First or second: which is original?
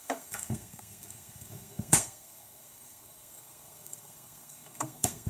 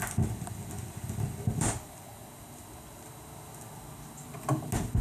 second